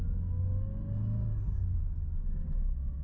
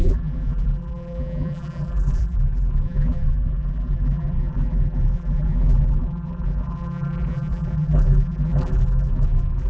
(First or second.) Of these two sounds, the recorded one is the first